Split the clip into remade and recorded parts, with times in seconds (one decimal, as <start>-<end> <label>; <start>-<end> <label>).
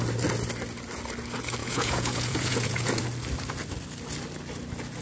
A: 0.0-1.6 recorded; 1.6-3.0 remade; 3.0-5.0 recorded